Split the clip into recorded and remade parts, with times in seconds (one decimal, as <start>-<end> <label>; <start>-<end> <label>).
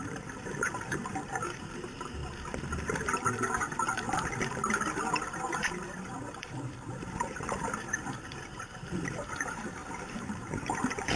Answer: 0.0-2.2 remade; 2.2-5.5 recorded; 5.5-11.2 remade